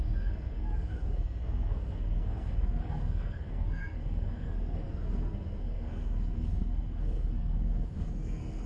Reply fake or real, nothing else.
fake